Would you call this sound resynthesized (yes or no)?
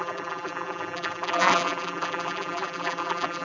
yes